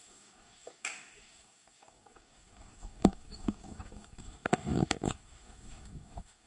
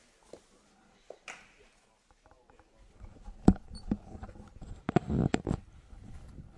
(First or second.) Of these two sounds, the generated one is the first